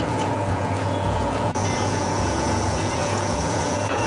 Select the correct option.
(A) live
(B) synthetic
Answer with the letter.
B